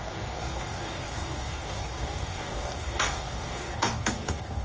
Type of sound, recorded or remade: remade